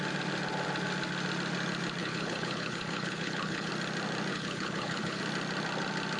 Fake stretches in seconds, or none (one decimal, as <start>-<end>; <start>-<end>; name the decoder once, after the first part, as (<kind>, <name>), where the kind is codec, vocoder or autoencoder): 2.0-3.7 (codec, HILCodec); 4.3-5.2